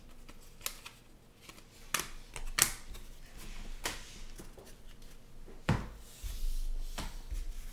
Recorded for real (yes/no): yes